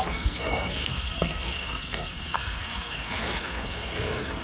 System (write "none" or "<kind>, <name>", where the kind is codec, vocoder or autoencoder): codec, SNAC